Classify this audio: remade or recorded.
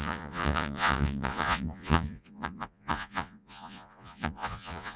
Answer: remade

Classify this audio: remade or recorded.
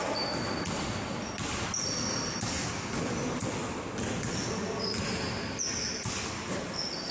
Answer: recorded